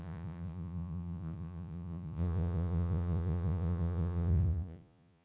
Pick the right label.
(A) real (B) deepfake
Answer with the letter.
B